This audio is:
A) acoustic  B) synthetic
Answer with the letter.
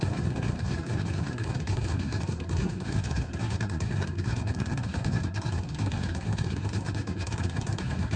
B